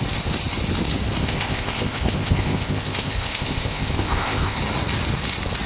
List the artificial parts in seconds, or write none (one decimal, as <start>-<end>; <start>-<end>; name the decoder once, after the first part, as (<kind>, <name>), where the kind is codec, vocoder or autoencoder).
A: 1.2-4.6 (codec, ZipCodec)